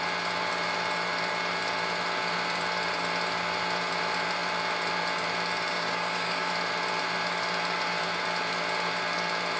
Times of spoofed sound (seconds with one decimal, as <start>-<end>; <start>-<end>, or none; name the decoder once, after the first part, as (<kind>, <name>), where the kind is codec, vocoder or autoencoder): 5.7-6.5 (codec, DAC)